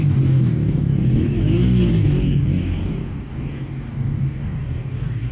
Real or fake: fake